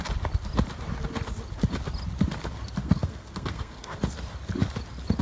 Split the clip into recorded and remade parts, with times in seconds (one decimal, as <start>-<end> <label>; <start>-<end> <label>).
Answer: 0.0-2.8 recorded; 2.8-4.0 remade; 4.0-5.2 recorded